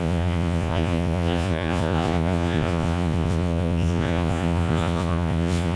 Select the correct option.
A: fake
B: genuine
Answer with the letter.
A